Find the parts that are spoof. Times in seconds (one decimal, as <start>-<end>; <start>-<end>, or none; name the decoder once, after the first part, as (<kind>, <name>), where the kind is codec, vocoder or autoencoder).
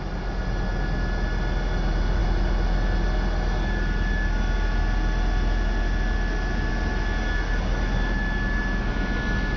none